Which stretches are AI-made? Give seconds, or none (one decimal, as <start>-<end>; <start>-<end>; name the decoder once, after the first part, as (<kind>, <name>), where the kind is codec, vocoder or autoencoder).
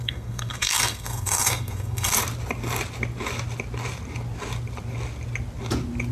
0.0-2.1 (codec, SNAC)